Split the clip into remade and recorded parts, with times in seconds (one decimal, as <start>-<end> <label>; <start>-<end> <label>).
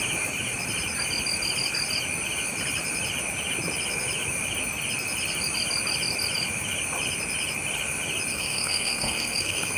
0.0-8.3 recorded; 8.3-9.8 remade